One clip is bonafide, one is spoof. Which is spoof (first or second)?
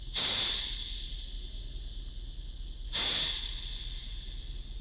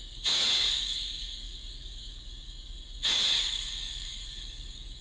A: second